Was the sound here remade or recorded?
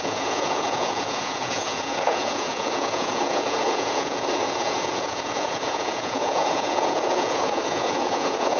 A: remade